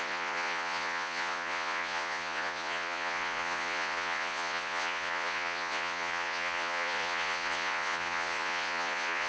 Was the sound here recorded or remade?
remade